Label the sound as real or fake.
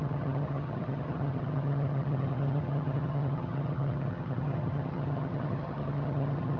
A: fake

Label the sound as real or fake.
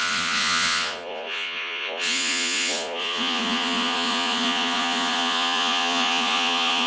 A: fake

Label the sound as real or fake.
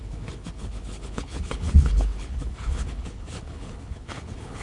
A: fake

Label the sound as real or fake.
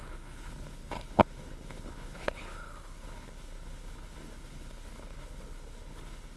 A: fake